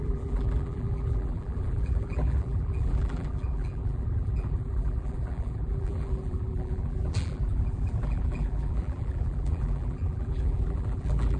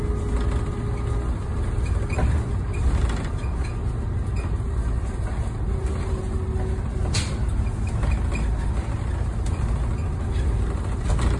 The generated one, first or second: first